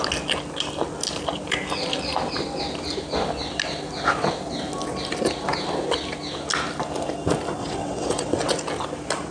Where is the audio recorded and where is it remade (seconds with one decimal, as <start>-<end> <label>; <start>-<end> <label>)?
0.0-7.6 recorded; 7.6-8.5 remade; 8.5-9.3 recorded